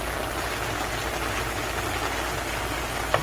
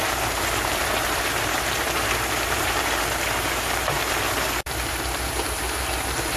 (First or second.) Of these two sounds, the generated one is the second